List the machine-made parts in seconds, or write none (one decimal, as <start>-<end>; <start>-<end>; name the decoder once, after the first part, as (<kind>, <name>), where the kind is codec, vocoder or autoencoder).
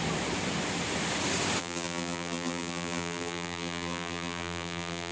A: 1.6-5.1 (vocoder, BigVGAN v2)